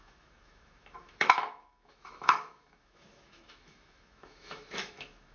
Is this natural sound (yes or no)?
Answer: no